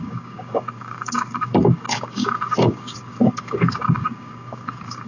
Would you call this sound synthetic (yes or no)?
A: yes